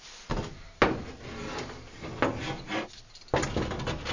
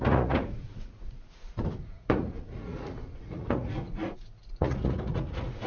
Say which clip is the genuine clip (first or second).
first